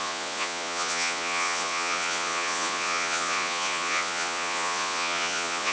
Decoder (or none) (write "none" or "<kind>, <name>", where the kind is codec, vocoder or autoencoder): vocoder, Vocos